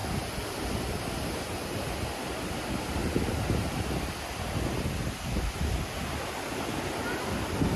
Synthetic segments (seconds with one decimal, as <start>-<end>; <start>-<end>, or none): none